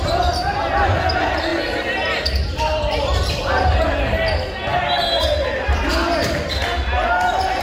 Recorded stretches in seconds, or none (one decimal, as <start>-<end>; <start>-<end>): 0.0-7.6